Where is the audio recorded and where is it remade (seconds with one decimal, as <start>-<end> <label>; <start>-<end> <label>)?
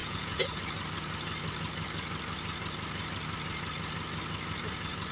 0.0-0.6 remade; 0.6-5.1 recorded